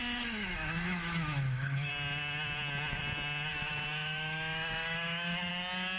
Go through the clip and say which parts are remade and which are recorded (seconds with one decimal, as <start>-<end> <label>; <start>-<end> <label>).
0.0-1.9 remade; 1.9-3.5 recorded; 3.5-5.5 remade; 5.5-6.0 recorded